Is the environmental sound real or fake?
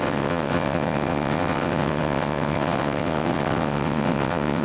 fake